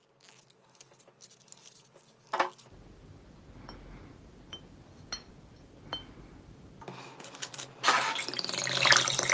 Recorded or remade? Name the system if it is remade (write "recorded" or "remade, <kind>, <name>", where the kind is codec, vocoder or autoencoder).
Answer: recorded